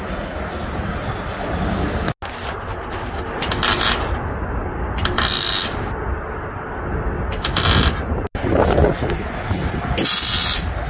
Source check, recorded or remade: recorded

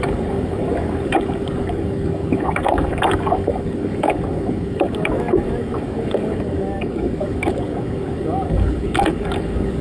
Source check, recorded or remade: remade